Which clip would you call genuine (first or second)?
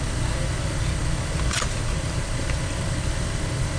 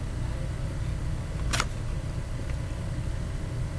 second